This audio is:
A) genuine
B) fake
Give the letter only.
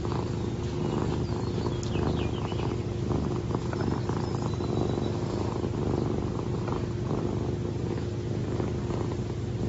A